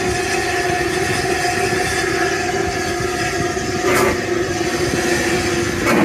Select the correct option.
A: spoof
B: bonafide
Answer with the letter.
B